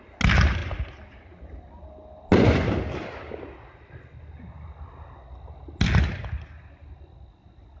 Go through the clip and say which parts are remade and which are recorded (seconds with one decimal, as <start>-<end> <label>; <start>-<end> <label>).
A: 0.0-7.8 recorded